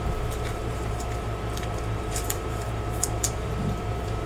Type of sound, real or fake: fake